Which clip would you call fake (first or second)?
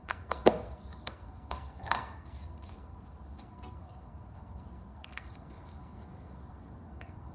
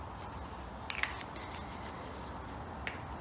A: first